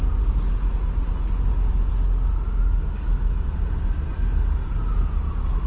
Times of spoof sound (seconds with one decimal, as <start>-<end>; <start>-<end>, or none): none